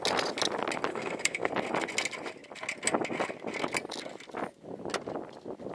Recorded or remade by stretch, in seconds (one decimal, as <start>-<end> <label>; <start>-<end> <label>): 0.0-0.9 recorded; 0.9-1.5 remade; 1.5-5.7 recorded